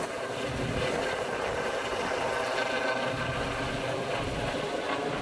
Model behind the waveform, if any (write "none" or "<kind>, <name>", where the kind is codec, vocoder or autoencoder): none